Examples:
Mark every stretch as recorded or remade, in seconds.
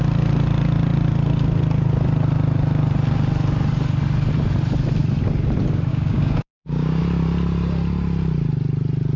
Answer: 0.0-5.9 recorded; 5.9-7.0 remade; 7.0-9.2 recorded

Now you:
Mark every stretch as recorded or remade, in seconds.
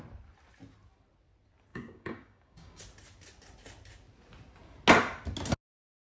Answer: 0.0-1.7 recorded; 1.7-2.8 remade; 2.8-6.0 recorded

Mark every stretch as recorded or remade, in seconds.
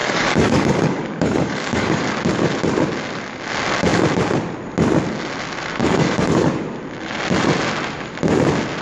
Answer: 0.0-2.1 remade; 2.1-5.8 recorded; 5.8-6.5 remade; 6.5-8.8 recorded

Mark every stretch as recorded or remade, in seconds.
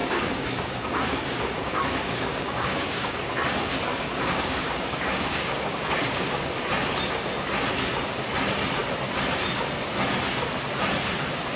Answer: 0.0-3.3 remade; 3.3-3.9 recorded; 3.9-6.6 remade; 6.6-11.6 recorded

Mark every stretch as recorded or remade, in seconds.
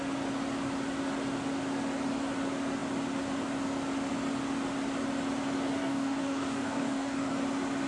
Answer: 0.0-5.8 recorded; 5.8-7.3 remade; 7.3-7.9 recorded